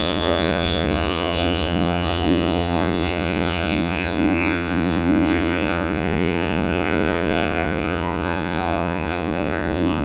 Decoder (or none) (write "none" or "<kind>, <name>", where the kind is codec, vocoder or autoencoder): vocoder, Vocos